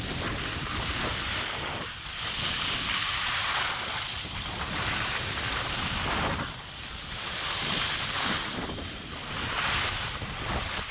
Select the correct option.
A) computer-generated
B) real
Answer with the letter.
A